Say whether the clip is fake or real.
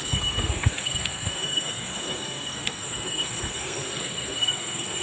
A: fake